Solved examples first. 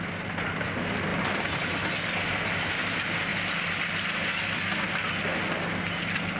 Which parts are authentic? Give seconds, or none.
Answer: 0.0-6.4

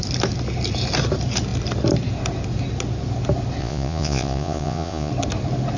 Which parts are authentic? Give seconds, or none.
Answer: 0.0-3.6; 5.1-5.8

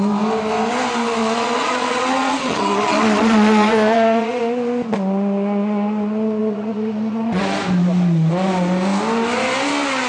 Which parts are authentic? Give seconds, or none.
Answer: 0.0-1.2; 4.4-6.4; 7.4-10.1

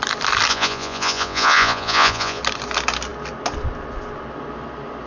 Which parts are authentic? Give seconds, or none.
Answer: 0.0-0.5; 2.4-5.1